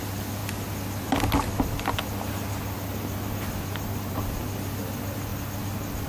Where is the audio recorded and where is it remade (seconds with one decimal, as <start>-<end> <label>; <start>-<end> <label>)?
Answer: 0.0-6.1 recorded